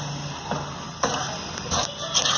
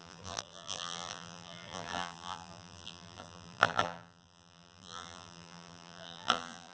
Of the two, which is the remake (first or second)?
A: second